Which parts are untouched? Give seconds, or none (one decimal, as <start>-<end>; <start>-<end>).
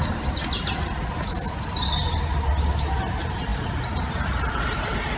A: 0.0-5.2